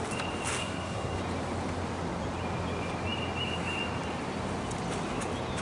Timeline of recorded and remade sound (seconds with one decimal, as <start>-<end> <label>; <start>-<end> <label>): 0.0-0.6 recorded; 0.6-1.2 remade; 1.2-5.6 recorded